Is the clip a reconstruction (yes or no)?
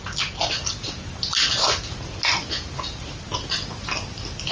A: no